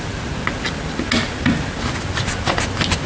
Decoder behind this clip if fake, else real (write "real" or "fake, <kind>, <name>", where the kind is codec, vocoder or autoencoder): real